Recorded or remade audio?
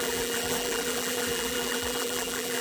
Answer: remade